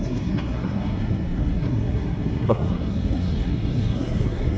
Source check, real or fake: fake